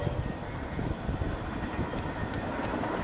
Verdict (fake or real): real